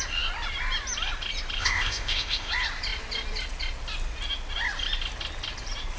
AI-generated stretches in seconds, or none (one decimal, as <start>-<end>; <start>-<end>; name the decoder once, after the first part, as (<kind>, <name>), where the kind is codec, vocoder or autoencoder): 1.6-2.5 (codec, ZipCodec)